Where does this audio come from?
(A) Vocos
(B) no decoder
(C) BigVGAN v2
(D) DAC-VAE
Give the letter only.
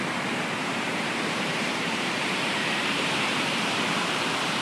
C